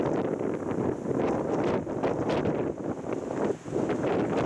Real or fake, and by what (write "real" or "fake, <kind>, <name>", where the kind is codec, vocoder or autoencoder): real